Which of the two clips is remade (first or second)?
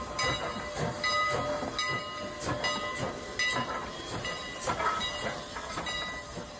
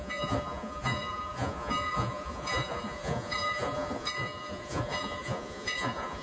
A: second